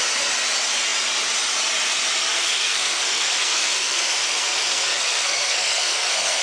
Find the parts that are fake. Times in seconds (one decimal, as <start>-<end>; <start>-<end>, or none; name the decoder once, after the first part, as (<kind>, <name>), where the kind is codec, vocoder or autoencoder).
2.3-6.4 (codec, SNAC)